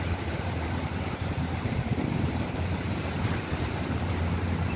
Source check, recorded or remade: remade